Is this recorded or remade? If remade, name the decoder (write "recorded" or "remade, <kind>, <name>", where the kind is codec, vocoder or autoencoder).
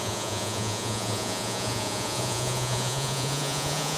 remade, vocoder, Vocos